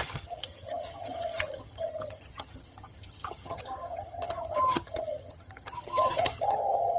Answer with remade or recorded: remade